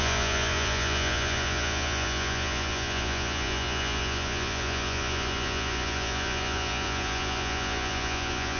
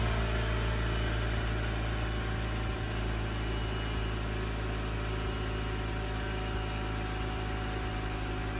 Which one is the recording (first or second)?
second